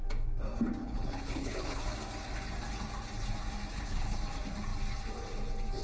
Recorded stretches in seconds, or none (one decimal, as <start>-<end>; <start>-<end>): 0.0-0.8; 1.8-3.7; 4.2-5.8

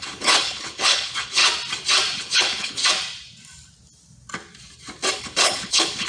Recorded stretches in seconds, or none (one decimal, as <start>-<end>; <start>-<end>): 1.4-2.2; 2.8-5.2

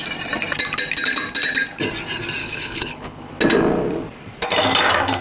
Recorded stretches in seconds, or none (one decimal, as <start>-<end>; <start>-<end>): 0.0-2.4; 3.3-5.2

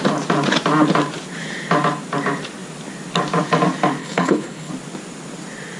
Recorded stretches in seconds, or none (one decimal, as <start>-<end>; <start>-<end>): 0.0-4.0; 4.7-5.8